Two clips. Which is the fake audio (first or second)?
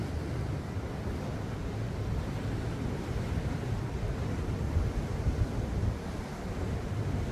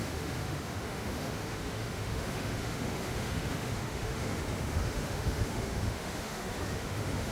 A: second